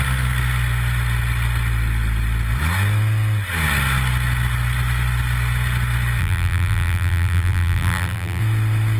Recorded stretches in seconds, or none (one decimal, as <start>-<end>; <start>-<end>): 0.0-6.2; 8.4-9.0